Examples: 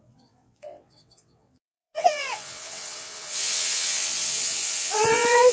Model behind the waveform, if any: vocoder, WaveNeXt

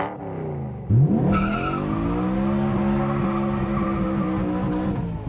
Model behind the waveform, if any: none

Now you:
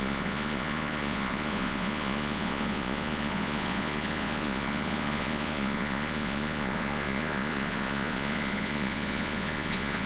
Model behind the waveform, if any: vocoder, Vocos